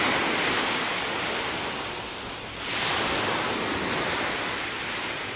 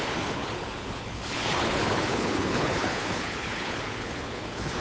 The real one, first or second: first